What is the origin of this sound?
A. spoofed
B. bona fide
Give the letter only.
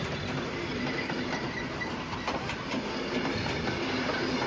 B